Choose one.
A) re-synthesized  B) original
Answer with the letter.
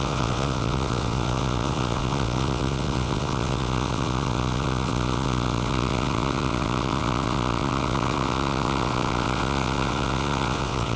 A